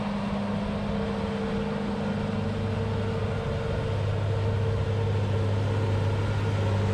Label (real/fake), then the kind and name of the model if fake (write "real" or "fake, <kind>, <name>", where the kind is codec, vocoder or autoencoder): real